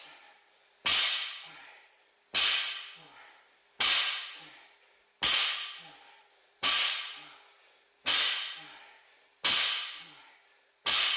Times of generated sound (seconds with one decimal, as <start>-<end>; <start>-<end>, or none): 0.9-2.2; 6.2-7.1